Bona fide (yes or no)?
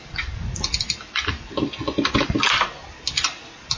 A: yes